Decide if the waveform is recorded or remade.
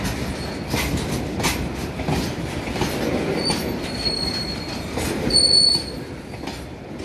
recorded